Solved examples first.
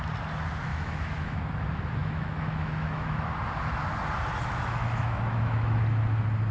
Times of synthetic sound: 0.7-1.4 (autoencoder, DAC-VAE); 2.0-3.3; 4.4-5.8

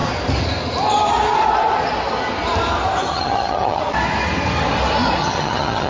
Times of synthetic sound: 3.1-3.8 (vocoder, HiFi-GAN); 5.2-5.9

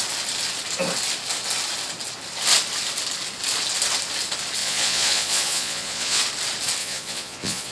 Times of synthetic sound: 4.6-6.2 (vocoder, Vocos); 6.8-7.7

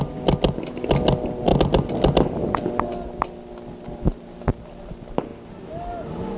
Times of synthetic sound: none

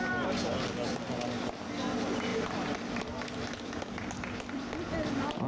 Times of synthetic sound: none

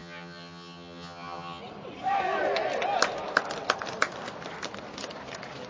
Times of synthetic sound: 0.0-1.6 (vocoder, HiFi-GAN)